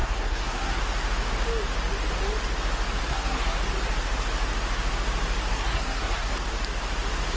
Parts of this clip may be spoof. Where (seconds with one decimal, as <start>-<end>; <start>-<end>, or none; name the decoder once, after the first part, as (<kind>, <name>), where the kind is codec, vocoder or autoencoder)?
0.0-0.8 (codec, SNAC); 3.1-3.6; 5.5-6.3